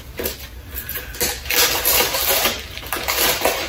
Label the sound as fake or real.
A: real